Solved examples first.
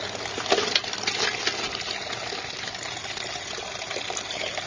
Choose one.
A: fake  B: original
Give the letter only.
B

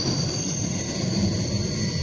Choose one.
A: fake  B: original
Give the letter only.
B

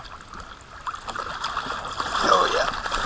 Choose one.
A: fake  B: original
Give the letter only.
B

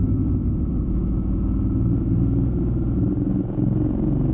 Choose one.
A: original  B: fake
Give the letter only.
B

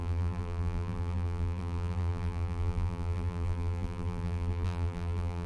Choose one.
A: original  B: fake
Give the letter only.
B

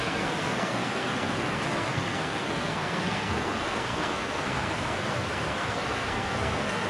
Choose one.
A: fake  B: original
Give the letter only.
A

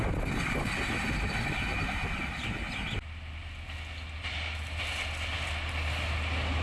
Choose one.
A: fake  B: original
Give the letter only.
B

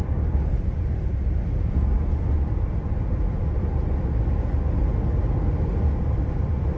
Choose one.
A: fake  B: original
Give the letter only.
B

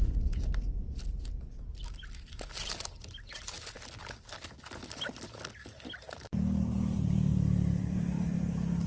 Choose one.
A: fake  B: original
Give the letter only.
B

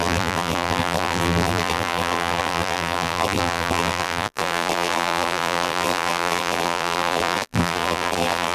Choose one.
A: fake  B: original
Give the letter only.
A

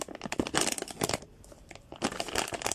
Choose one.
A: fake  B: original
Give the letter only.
B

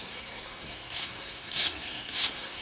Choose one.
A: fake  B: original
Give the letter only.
A